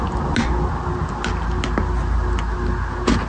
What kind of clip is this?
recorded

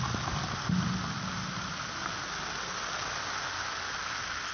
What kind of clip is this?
recorded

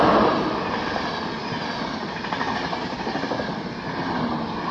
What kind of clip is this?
recorded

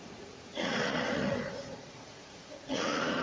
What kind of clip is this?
remade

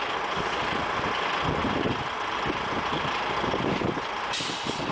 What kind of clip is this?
recorded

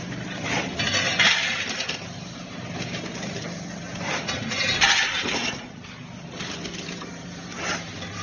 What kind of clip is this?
remade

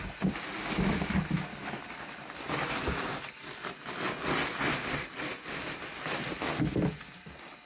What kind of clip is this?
recorded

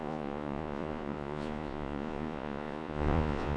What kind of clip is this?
remade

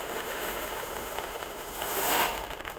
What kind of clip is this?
remade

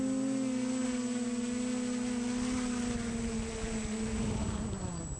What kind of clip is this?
recorded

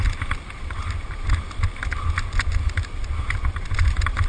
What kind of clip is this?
recorded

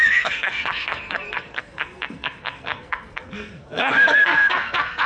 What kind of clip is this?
remade